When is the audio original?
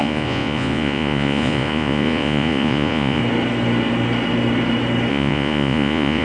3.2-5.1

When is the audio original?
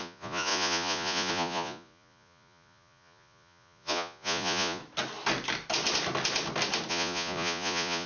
4.8-6.9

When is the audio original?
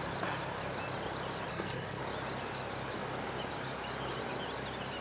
0.0-1.5; 2.0-5.0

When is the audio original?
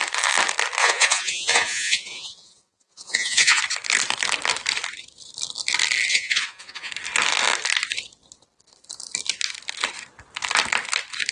0.0-0.8; 3.6-6.1; 6.9-11.3